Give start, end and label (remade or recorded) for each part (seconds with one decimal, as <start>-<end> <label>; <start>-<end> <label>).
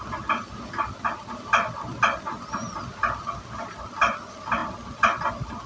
0.0-5.7 recorded